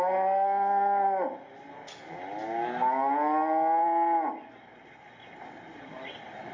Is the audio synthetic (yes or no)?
no